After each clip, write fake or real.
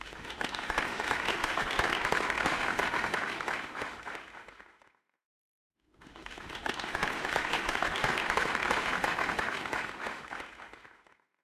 fake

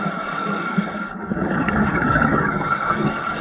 fake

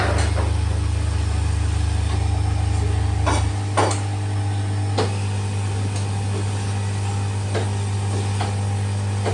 real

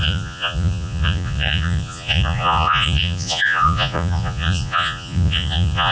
fake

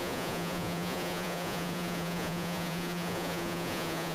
fake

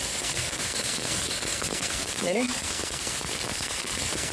fake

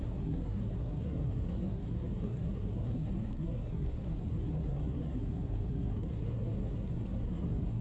fake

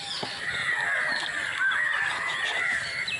real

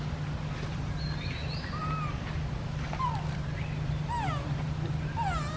real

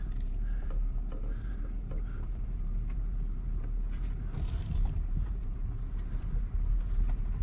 fake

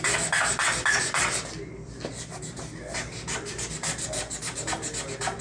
real